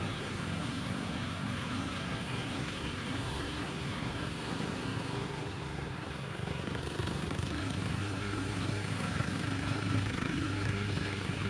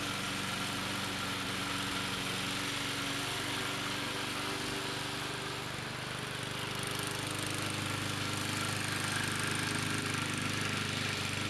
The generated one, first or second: first